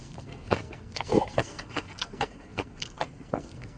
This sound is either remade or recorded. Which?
remade